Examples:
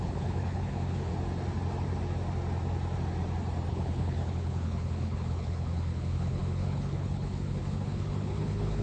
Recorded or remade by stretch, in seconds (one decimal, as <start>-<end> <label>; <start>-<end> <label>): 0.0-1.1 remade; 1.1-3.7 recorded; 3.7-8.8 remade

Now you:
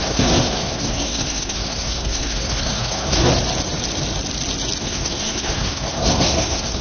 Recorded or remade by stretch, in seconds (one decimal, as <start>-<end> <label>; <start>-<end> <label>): 0.0-3.3 remade; 3.3-4.8 recorded; 4.8-6.8 remade

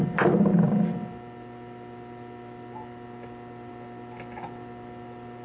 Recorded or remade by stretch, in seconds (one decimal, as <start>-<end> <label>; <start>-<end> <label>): 0.0-5.4 recorded

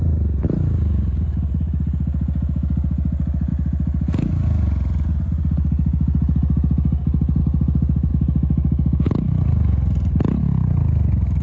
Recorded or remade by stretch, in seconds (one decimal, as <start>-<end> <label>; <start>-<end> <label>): 0.0-8.1 recorded; 8.1-9.4 remade; 9.4-11.4 recorded

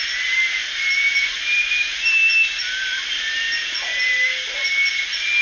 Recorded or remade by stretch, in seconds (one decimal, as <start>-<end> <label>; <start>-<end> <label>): 0.0-5.4 recorded

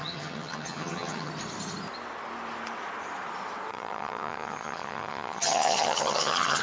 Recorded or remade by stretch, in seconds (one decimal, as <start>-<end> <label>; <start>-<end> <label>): 0.0-1.3 remade; 1.3-3.7 recorded; 3.7-6.6 remade

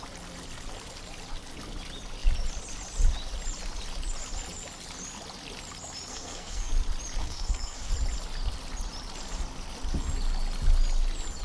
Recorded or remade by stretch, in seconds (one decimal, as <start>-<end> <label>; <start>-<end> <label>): 0.0-6.1 recorded; 6.1-6.7 remade; 6.7-7.2 recorded; 7.2-7.9 remade; 7.9-11.4 recorded

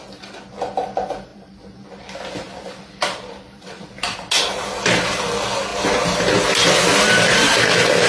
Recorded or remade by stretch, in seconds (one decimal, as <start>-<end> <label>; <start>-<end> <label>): 0.0-1.3 recorded; 1.3-5.2 remade; 5.2-8.1 recorded